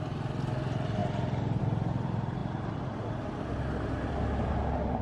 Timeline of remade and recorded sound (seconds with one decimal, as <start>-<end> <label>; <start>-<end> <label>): 0.0-5.0 recorded